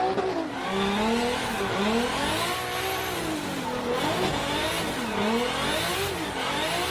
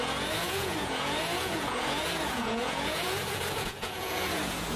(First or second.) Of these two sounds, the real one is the first